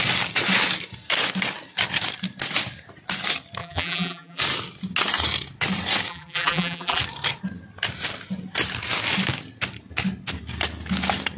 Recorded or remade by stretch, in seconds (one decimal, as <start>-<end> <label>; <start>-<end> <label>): 0.0-3.6 recorded; 3.6-4.4 remade; 4.4-6.1 recorded; 6.1-7.0 remade; 7.0-11.4 recorded